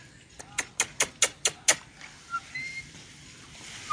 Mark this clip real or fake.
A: real